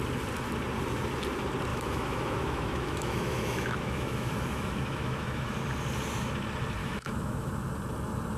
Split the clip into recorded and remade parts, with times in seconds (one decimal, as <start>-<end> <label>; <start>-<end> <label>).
0.0-1.7 recorded; 1.7-5.6 remade; 5.6-6.8 recorded; 6.8-7.5 remade; 7.5-8.4 recorded

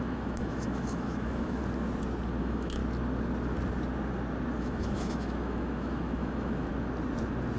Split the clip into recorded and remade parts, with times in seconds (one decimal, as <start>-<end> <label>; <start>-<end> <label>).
0.0-1.6 remade; 1.6-2.4 recorded; 2.4-2.8 remade; 2.8-4.6 recorded; 4.6-6.7 remade; 6.7-7.6 recorded